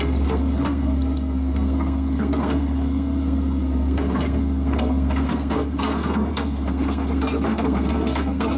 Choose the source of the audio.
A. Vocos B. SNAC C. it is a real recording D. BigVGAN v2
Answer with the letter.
B